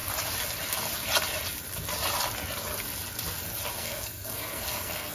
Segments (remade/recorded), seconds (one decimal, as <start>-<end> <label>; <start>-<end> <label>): 0.0-3.7 recorded; 3.7-5.1 remade